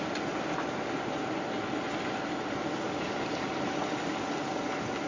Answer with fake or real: real